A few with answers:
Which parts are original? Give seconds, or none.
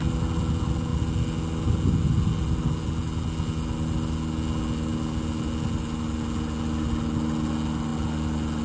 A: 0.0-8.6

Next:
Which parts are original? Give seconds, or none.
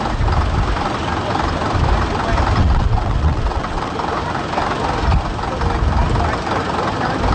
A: 0.0-2.6; 3.9-7.3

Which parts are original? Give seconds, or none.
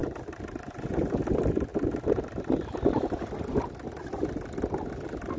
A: 0.0-5.4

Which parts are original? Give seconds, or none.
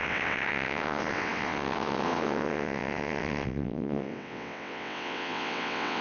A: none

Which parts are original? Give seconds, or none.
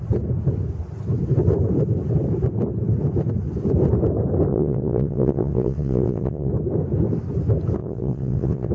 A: 0.0-4.5; 6.5-7.8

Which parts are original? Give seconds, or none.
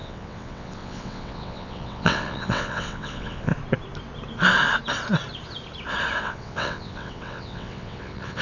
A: 3.5-6.2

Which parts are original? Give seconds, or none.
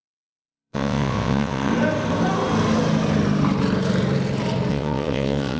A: 1.7-4.7